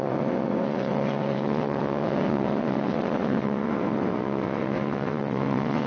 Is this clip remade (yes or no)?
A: yes